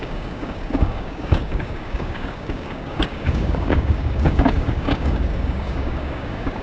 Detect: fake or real fake